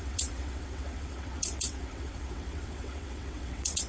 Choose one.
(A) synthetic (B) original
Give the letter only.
A